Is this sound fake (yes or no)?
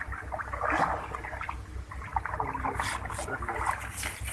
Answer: no